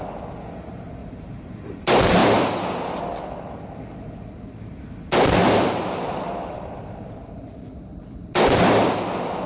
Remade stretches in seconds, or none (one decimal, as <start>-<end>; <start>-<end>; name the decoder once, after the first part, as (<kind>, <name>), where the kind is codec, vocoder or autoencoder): 1.0-1.5 (vocoder, BigVGAN v2); 5.4-7.7